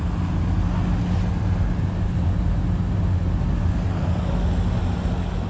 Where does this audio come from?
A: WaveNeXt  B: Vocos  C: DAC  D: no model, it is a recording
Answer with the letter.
D